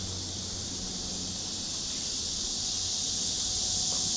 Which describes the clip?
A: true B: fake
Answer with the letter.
A